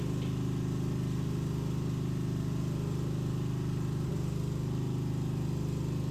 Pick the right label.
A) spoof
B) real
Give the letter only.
B